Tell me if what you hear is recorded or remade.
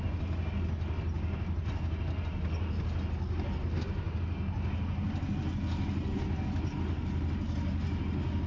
recorded